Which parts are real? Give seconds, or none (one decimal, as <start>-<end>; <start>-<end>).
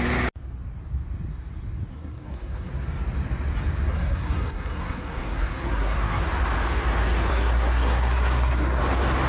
0.0-1.9; 2.7-3.9; 6.2-7.3; 8.8-9.3